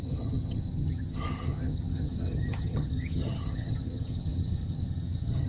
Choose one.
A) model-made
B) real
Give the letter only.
A